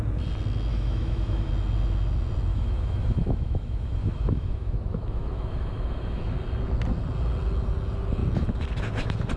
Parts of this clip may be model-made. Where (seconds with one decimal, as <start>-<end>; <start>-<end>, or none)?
0.7-1.5; 2.5-6.2